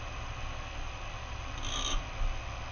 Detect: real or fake real